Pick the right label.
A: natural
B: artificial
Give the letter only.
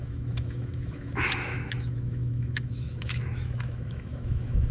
B